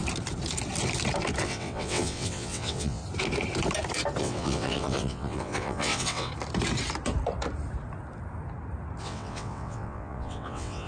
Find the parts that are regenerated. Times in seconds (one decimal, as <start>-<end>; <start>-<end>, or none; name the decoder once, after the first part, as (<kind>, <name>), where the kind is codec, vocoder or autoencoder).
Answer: 1.4-3.0 (vocoder, WaveNeXt); 4.2-6.3; 9.0-10.9